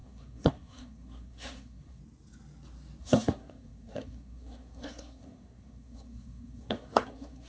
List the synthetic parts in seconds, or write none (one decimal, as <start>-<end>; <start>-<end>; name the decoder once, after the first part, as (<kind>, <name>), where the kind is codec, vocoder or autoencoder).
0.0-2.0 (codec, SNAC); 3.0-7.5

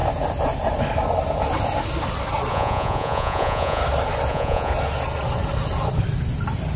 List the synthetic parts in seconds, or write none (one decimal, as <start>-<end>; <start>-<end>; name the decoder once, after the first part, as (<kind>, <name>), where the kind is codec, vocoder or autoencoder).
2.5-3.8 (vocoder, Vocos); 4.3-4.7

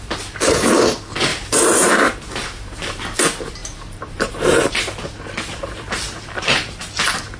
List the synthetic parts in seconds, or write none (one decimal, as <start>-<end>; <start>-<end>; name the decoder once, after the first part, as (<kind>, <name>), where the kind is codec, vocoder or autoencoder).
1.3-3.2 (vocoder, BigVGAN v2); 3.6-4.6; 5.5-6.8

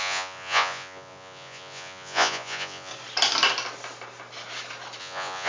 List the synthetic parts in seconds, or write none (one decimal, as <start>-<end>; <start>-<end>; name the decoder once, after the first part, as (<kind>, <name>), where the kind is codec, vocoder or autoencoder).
0.0-2.9 (vocoder, Vocos); 5.0-5.5

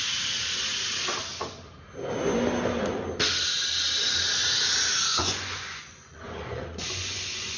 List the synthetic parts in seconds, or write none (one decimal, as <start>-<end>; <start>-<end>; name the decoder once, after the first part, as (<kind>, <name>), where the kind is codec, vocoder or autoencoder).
5.1-7.6 (vocoder, Vocos)